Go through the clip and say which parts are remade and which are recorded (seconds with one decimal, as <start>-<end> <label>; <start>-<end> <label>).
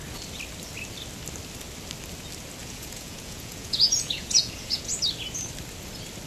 0.0-2.6 recorded; 2.6-4.9 remade; 4.9-6.3 recorded